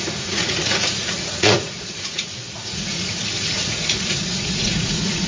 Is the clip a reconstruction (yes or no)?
yes